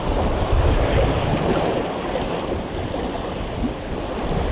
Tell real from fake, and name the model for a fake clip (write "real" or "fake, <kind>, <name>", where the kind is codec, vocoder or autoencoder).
real